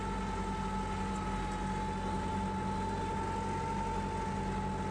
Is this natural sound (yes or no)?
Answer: yes